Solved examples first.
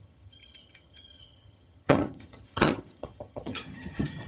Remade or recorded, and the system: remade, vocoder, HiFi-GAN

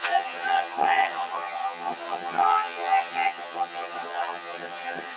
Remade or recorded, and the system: remade, vocoder, HiFi-GAN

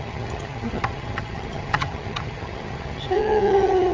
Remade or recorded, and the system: remade, vocoder, HiFi-GAN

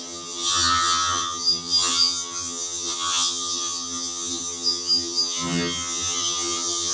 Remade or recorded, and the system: remade, vocoder, HiFi-GAN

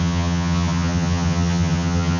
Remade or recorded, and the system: remade, vocoder, HiFi-GAN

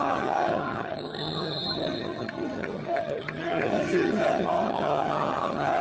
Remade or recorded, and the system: remade, vocoder, HiFi-GAN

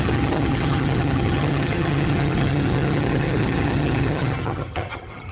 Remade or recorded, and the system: remade, vocoder, HiFi-GAN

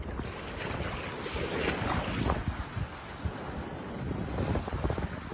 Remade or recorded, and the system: recorded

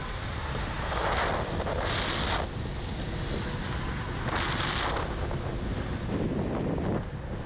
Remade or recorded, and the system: recorded